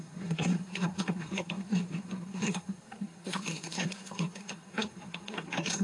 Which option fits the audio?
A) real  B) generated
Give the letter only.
B